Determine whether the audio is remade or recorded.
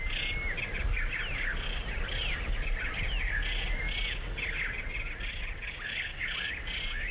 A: recorded